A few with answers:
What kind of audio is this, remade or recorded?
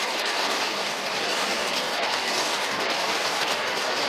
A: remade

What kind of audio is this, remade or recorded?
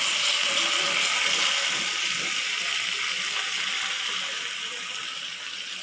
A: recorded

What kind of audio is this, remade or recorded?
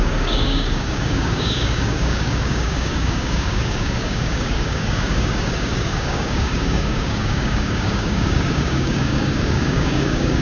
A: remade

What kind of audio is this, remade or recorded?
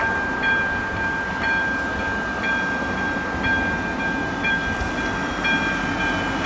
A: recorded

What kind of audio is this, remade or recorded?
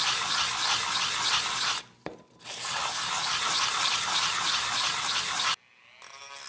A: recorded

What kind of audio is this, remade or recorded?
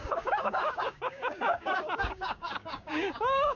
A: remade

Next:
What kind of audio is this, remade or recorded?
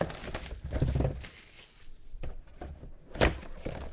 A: recorded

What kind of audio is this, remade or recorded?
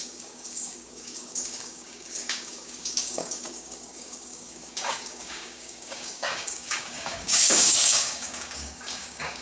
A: remade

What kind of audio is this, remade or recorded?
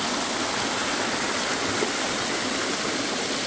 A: recorded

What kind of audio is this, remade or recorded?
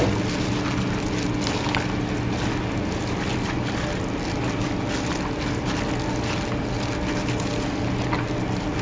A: recorded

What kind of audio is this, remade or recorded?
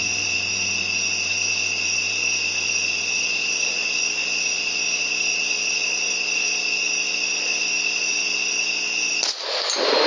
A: recorded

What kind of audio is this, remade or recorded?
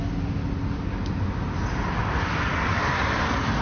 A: recorded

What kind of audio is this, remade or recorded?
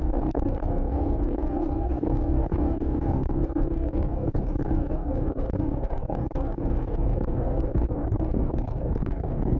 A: remade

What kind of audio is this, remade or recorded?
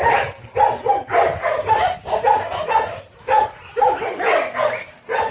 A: recorded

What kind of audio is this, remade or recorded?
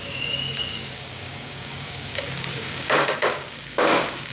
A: remade